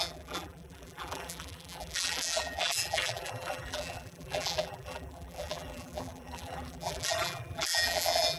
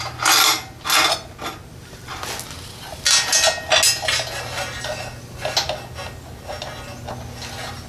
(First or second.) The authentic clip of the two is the second